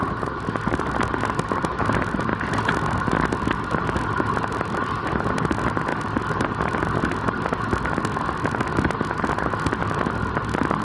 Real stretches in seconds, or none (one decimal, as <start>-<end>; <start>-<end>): 0.0-10.8